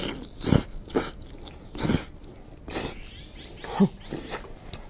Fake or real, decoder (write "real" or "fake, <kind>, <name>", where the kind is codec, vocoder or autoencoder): real